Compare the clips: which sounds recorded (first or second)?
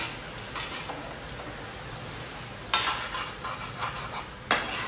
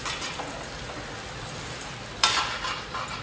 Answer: first